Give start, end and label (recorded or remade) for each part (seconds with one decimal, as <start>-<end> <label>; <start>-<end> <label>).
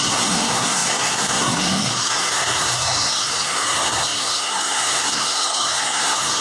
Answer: 0.0-6.4 remade